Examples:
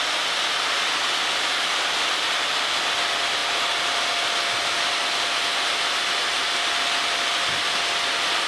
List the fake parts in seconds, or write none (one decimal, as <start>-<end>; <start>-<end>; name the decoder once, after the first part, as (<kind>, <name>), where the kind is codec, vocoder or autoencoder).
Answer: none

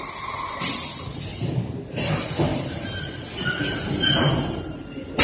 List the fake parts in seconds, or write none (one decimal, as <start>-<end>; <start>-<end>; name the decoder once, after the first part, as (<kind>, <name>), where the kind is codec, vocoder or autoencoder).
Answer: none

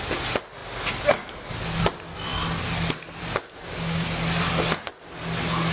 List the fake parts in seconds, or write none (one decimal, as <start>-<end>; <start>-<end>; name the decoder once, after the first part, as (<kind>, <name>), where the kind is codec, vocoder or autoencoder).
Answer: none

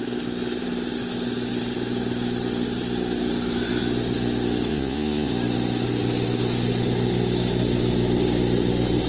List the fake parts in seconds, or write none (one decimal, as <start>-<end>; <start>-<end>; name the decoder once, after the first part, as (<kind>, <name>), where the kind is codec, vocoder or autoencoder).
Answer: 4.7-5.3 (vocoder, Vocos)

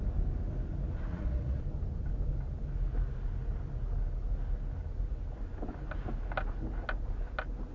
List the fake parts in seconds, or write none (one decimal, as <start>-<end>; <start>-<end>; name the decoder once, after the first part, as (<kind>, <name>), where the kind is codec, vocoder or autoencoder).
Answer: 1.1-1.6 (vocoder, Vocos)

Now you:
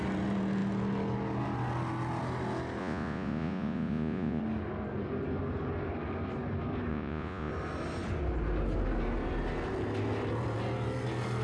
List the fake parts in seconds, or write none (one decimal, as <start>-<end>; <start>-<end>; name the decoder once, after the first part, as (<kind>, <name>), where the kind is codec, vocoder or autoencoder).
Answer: 2.8-4.4 (vocoder, Vocos); 6.9-7.5

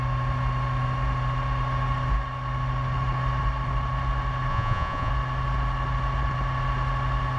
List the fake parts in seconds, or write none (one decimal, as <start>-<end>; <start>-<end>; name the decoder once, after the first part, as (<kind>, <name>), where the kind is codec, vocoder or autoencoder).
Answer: 4.5-5.1 (vocoder, Vocos)

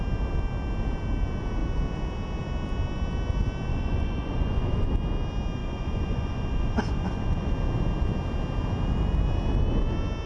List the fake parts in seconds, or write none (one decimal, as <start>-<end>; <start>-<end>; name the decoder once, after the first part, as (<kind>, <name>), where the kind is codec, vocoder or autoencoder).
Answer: 3.7-4.9 (vocoder, Vocos); 5.6-7.5